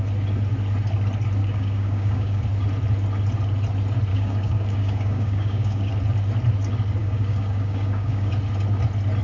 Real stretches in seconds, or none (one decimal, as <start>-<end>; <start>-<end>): 0.0-1.4; 2.4-4.1; 5.9-7.0; 8.3-9.2